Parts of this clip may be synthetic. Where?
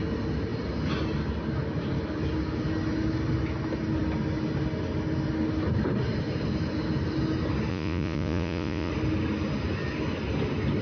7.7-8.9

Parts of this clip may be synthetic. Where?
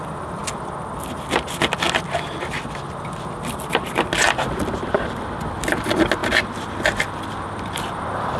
none